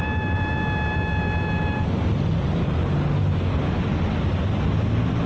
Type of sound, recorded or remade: recorded